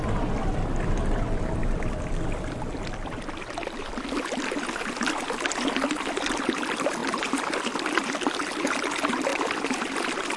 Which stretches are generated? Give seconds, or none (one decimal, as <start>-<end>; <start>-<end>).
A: 7.0-7.6; 9.3-9.8